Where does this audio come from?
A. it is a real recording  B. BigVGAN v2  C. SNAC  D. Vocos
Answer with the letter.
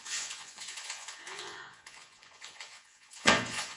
D